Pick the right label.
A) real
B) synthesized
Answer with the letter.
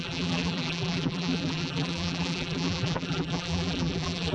B